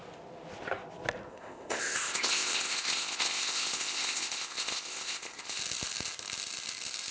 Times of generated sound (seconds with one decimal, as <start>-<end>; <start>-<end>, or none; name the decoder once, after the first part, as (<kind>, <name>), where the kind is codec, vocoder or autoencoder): 1.3-5.6 (codec, ZipCodec)